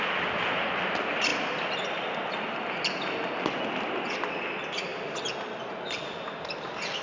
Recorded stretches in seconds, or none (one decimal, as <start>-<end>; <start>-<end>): 0.0-7.0

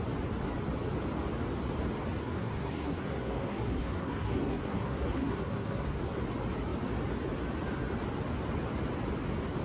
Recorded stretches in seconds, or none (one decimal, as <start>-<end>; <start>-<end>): 0.0-2.2; 6.2-9.6

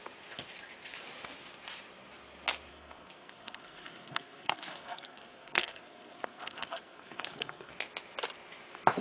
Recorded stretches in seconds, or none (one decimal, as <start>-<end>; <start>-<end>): 0.0-2.7; 7.7-9.0

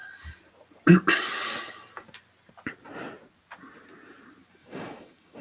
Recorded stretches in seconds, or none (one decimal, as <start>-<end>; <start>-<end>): 0.0-4.6

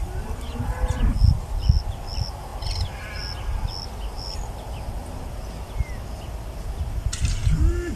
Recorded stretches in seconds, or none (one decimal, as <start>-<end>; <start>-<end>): 0.0-8.0

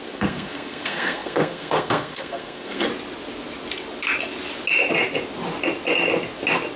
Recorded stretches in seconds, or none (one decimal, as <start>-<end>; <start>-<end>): 2.9-6.8

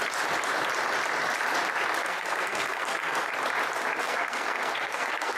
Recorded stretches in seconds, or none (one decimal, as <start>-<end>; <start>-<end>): 0.0-2.0; 3.3-4.0

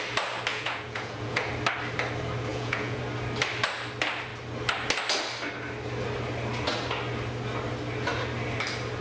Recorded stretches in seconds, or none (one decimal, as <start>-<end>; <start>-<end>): 0.0-0.5; 1.5-2.5; 3.0-9.0